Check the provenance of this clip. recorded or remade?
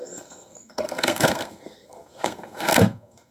remade